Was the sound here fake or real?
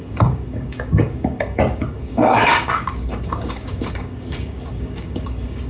fake